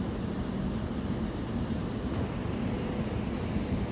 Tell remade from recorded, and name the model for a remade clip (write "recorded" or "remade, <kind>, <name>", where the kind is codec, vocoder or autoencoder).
recorded